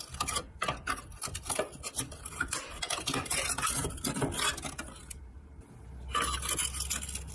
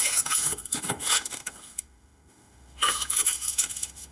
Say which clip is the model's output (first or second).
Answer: second